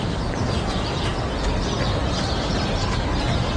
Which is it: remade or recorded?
recorded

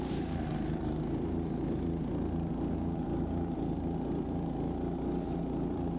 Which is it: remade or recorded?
remade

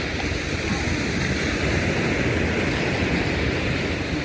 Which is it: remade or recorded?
recorded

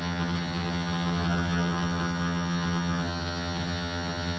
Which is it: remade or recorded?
remade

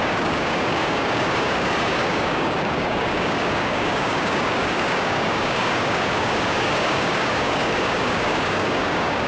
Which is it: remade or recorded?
remade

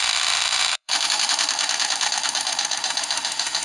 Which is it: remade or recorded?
remade